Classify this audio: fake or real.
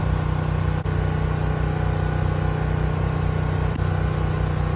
real